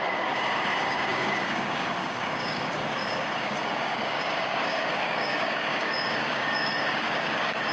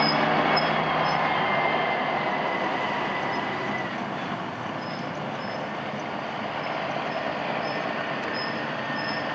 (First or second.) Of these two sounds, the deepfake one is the first